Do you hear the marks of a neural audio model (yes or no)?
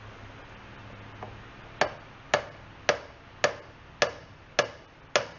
no